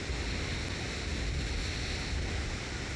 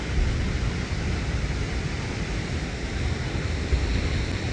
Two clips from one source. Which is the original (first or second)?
first